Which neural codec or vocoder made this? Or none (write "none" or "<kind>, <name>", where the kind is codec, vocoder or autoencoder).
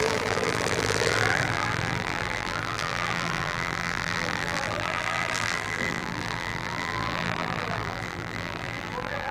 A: vocoder, BigVGAN v2